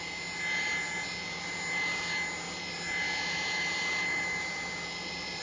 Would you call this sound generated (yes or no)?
no